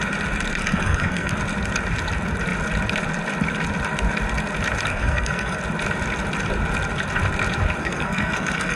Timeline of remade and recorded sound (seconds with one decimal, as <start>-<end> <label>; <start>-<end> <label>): 0.0-0.6 recorded; 0.6-1.3 remade; 1.3-4.9 recorded; 4.9-5.6 remade; 5.6-7.8 recorded; 7.8-8.8 remade